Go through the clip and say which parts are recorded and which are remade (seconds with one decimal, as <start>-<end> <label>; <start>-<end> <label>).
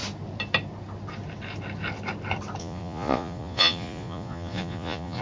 0.0-2.6 recorded; 2.6-5.2 remade